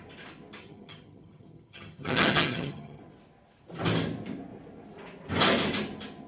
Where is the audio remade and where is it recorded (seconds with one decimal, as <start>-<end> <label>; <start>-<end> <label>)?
0.0-0.6 recorded; 0.6-3.0 remade; 3.0-6.3 recorded